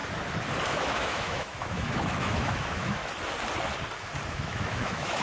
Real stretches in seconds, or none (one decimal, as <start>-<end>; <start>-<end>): 0.0-0.7; 3.0-4.3